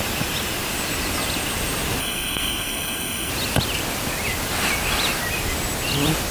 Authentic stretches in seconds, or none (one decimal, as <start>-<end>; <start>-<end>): 0.0-2.0; 3.3-6.3